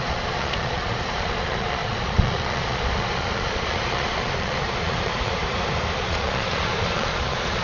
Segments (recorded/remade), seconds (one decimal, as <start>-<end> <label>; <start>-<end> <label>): 0.0-5.4 remade; 5.4-6.0 recorded; 6.0-7.6 remade